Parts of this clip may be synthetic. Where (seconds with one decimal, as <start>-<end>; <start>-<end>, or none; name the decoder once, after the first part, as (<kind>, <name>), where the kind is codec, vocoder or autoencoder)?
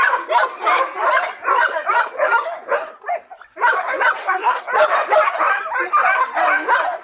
4.2-4.7 (codec, SNAC)